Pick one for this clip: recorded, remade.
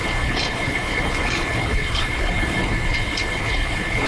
remade